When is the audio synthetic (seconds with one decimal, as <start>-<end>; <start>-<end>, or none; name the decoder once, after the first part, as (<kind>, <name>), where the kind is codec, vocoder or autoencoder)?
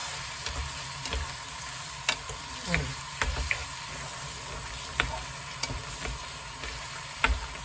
none